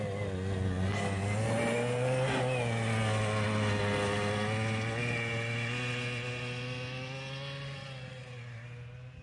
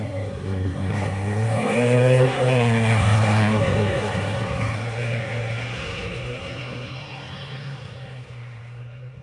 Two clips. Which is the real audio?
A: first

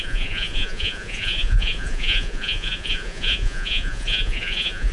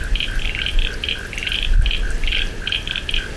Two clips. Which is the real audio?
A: second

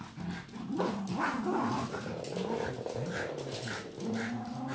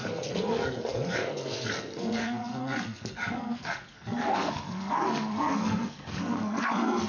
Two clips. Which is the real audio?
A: first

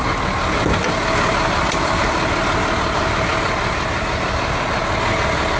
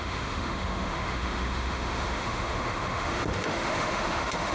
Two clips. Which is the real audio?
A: first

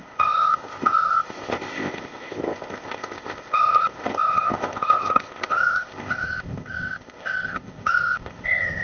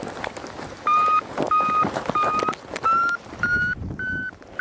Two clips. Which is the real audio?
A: second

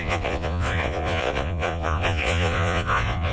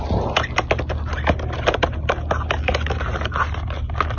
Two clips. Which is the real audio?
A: second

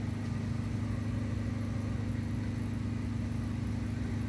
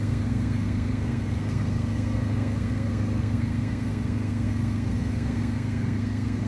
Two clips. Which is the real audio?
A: first